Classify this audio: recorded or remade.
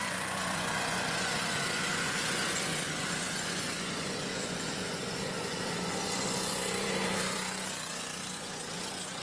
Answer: remade